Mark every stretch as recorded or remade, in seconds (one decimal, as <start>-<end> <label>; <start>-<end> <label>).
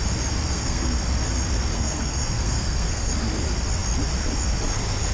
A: 0.0-0.5 recorded; 0.5-1.0 remade; 1.0-1.7 recorded; 1.7-3.1 remade; 3.1-5.1 recorded